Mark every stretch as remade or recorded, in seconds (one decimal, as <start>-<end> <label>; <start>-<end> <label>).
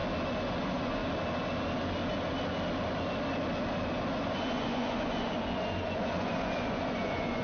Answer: 0.0-0.6 recorded; 0.6-1.0 remade; 1.0-4.2 recorded; 4.2-7.4 remade